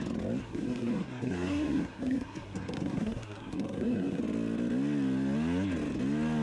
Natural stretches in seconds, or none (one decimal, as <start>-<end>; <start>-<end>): 0.0-0.4; 4.2-6.4